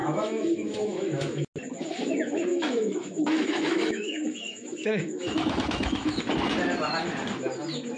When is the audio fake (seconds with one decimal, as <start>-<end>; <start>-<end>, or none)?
0.0-1.5; 2.5-6.2